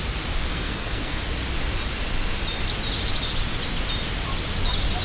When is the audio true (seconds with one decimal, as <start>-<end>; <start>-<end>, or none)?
0.0-0.5; 1.2-5.0